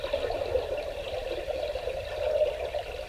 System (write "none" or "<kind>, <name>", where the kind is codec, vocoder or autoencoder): none